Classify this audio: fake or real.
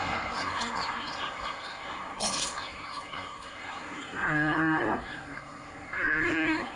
fake